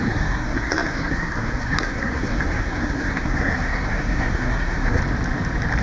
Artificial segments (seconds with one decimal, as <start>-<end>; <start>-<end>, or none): 0.0-5.0